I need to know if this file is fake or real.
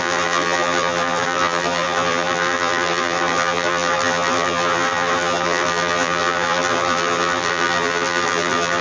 fake